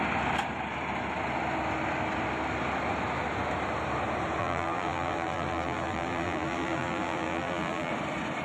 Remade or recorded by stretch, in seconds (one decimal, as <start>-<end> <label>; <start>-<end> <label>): 0.0-4.4 recorded; 4.4-7.9 remade; 7.9-8.4 recorded